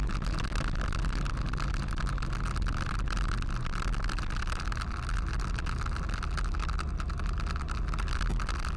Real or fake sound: real